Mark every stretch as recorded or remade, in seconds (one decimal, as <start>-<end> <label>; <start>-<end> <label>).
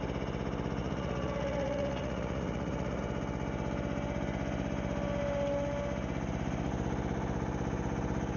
0.0-0.8 recorded; 0.8-3.0 remade; 3.0-8.4 recorded